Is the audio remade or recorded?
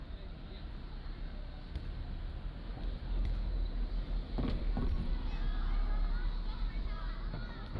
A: recorded